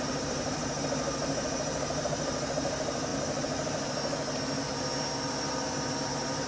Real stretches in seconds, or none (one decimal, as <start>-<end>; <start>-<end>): 0.6-2.0; 3.1-6.5